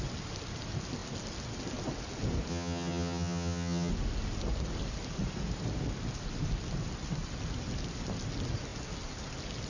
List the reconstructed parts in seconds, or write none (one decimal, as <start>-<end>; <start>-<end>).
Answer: 2.5-3.9